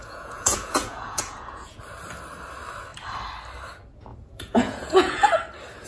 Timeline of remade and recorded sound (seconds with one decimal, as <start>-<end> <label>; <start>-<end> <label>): 0.0-1.8 remade; 1.8-4.1 recorded; 4.1-5.3 remade; 5.3-5.9 recorded